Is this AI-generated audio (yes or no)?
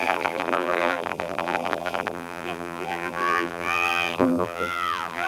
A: yes